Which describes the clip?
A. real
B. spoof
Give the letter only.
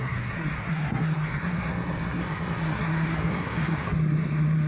B